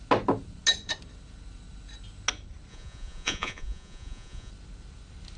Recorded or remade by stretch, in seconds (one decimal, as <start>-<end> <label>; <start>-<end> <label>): 0.0-2.7 recorded; 2.7-4.5 remade; 4.5-5.4 recorded